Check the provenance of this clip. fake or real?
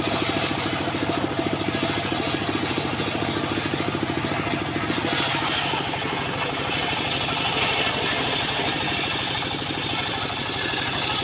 real